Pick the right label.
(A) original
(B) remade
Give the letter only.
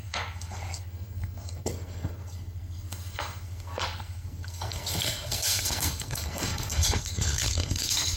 B